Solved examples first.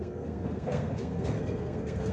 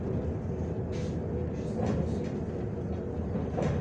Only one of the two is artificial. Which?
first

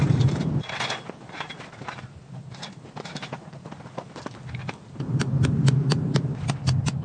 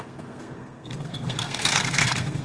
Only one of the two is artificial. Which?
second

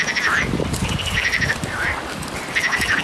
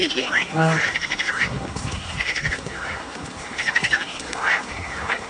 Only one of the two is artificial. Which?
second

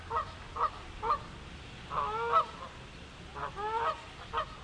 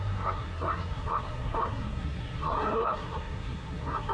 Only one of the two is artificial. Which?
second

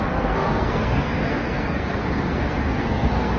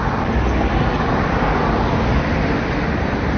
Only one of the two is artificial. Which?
first